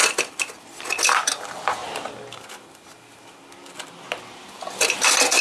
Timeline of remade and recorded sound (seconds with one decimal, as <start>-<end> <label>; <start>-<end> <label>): 0.0-5.4 recorded